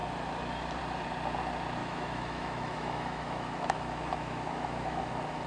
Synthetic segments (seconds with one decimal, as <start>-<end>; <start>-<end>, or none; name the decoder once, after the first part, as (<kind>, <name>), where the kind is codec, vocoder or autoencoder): 1.8-5.1 (autoencoder, DAC-VAE)